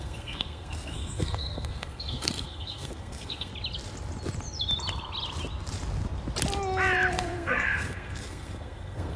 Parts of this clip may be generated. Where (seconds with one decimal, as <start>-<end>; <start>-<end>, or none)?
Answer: 0.0-3.5; 7.1-9.2